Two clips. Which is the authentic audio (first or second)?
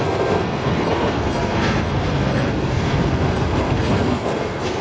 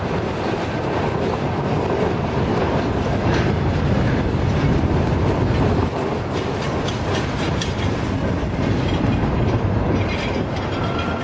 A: second